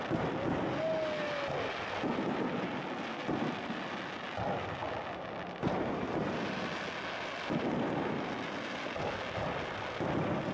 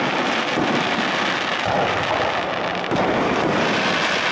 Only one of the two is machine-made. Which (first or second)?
second